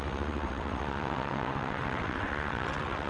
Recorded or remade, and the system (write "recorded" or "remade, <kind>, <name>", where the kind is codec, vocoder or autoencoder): remade, vocoder, WaveNeXt